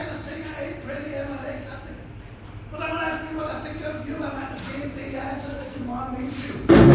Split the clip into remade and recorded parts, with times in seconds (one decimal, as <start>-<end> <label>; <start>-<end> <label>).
0.0-5.5 recorded; 5.5-6.0 remade; 6.0-6.9 recorded